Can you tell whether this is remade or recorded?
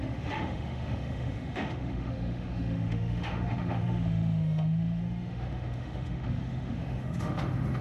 remade